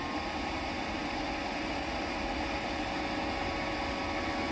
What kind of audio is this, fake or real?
real